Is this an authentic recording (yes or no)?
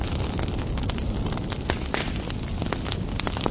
yes